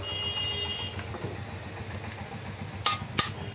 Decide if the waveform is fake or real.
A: real